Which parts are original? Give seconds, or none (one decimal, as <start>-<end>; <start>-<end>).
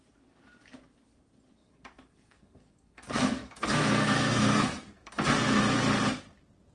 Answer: 0.0-1.6; 5.6-6.7